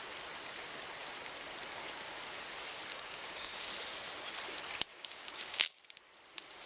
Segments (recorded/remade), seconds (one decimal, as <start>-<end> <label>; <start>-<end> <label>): 0.0-2.9 recorded; 2.9-3.7 remade; 3.7-4.9 recorded; 4.9-5.8 remade; 5.8-6.7 recorded